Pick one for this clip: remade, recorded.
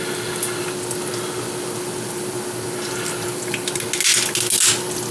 recorded